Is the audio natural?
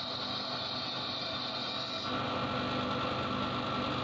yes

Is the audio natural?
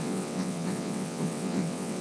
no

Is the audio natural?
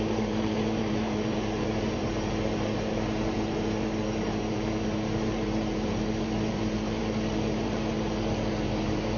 no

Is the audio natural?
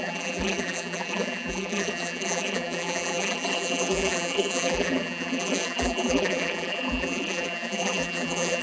no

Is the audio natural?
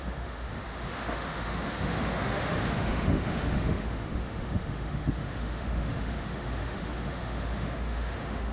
no